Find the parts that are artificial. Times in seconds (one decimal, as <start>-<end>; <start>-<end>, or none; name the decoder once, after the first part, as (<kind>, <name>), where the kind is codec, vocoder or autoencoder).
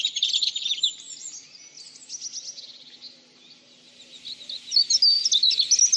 none